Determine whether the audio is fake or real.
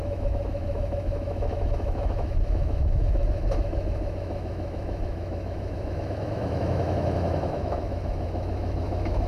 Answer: fake